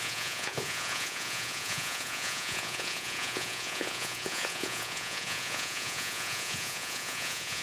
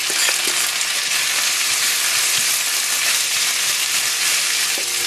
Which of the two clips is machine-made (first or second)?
first